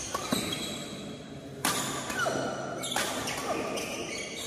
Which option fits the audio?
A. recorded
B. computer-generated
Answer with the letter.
A